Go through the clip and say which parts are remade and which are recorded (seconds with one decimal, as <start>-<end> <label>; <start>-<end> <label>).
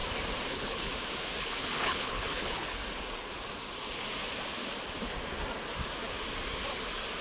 0.0-0.5 recorded; 0.5-0.9 remade; 0.9-1.4 recorded; 1.4-2.8 remade; 2.8-7.2 recorded